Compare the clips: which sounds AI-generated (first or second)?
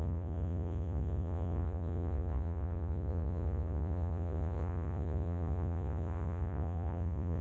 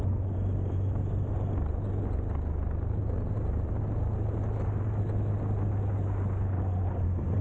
first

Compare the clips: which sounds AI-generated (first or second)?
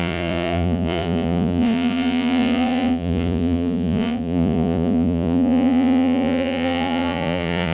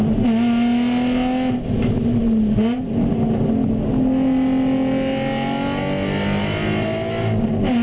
first